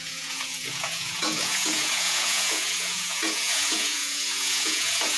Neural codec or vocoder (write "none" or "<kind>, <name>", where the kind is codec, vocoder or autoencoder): vocoder, Vocos